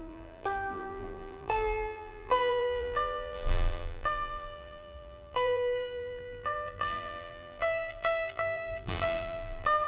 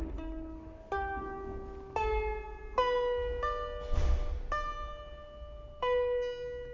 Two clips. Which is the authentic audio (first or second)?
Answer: second